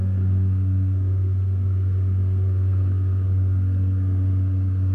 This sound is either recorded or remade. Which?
remade